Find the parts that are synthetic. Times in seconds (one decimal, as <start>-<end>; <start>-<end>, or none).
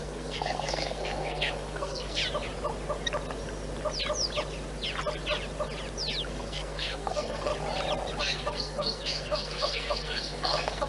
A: 0.0-2.2; 6.3-7.5; 8.2-10.9